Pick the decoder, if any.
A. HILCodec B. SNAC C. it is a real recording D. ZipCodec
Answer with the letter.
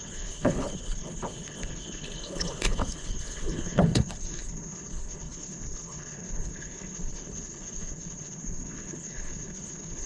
A